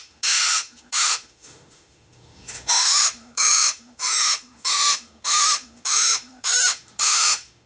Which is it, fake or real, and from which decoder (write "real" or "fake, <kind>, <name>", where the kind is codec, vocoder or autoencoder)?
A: fake, autoencoder, DAC-VAE